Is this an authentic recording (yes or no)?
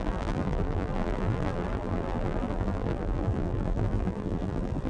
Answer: no